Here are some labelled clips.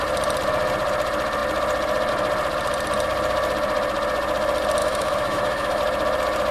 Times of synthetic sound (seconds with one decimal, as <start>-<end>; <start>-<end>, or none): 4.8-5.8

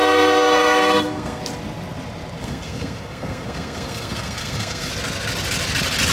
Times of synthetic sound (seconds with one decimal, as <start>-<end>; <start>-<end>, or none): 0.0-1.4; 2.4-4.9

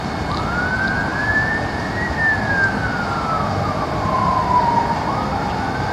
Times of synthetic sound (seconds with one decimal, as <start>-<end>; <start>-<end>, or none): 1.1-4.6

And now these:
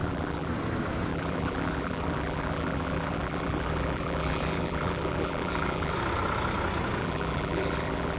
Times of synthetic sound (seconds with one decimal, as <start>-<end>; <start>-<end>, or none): 0.0-0.5; 1.1-5.9; 7.0-8.2

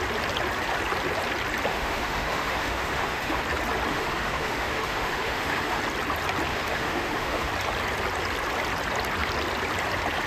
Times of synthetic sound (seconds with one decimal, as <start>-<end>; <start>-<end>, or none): 1.7-3.4; 3.9-5.8; 6.5-7.5